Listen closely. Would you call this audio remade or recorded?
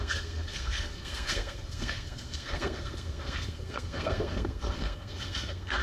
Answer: remade